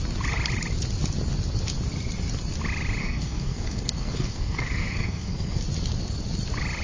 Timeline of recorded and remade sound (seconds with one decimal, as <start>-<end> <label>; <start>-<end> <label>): 0.0-3.0 recorded; 3.0-5.6 remade; 5.6-6.8 recorded